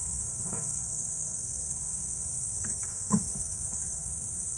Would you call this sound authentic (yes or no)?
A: no